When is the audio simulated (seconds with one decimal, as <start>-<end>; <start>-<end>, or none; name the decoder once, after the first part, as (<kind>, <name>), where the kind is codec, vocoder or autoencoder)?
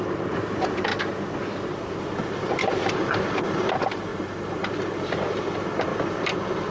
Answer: 0.0-0.9 (vocoder, BigVGAN v2); 2.0-6.7